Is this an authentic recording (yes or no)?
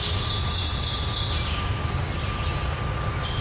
yes